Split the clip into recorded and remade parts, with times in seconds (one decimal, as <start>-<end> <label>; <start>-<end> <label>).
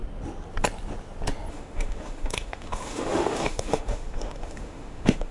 0.0-1.5 recorded; 1.5-5.3 remade